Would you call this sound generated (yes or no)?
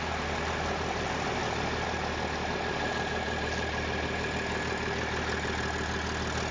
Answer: no